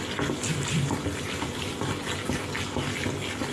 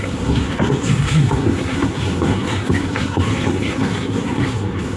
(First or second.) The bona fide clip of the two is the first